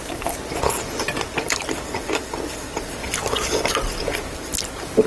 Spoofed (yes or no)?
yes